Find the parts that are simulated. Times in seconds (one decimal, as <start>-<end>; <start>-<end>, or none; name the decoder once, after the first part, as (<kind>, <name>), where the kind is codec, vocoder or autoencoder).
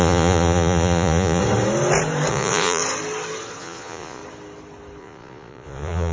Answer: 0.0-1.4 (vocoder, Vocos); 2.3-2.8; 3.6-4.2; 5.0-6.1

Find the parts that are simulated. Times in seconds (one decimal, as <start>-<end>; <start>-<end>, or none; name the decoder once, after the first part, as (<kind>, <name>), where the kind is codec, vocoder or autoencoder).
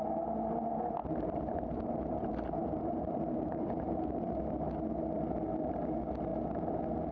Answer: 1.0-4.4 (vocoder, BigVGAN v2); 6.3-7.1